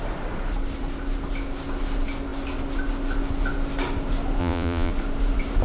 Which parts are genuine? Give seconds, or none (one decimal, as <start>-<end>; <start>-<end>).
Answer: 0.0-4.4; 4.9-5.6